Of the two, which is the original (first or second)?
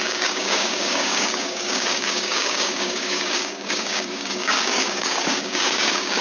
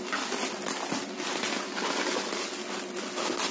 second